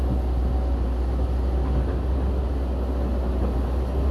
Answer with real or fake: real